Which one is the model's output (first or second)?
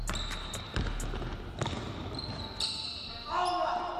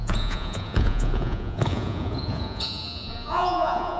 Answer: second